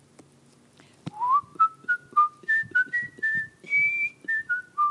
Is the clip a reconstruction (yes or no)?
no